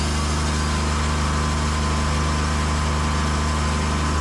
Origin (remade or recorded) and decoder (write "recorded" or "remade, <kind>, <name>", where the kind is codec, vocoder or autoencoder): recorded